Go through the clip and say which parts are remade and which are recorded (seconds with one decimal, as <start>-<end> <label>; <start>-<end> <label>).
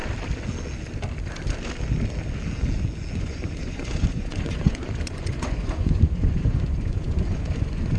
0.0-3.2 recorded; 3.2-8.0 remade